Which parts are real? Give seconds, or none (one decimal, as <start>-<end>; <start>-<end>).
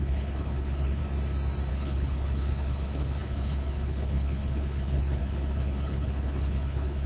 1.0-1.7